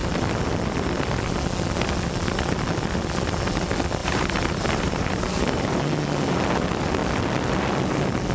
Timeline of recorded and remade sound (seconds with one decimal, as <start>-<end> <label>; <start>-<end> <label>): 0.0-4.0 recorded; 4.0-5.8 remade; 5.8-8.3 recorded